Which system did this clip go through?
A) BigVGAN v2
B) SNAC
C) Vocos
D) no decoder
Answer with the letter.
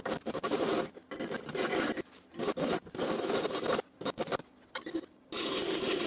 D